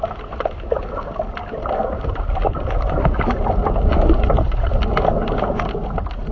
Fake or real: real